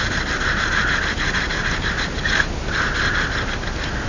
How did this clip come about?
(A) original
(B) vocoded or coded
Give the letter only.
A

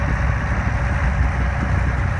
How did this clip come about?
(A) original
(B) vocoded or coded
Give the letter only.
A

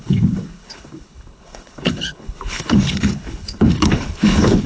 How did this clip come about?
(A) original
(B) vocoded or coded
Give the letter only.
B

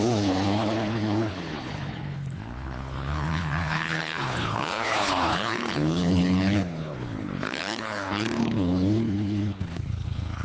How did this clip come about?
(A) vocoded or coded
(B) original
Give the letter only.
A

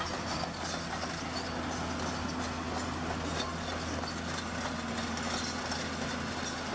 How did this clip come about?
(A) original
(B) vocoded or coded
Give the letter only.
A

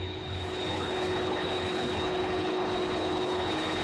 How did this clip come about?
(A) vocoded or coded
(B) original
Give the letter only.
A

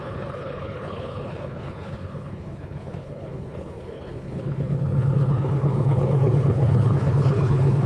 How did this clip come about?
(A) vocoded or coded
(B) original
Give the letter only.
A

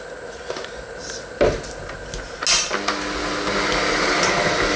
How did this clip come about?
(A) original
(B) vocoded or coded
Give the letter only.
A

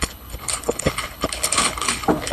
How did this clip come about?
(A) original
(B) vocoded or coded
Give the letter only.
B